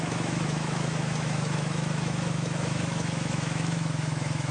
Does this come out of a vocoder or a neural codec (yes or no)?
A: yes